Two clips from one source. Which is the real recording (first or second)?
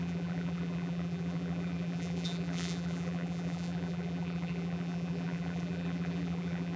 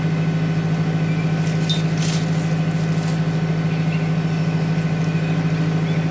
second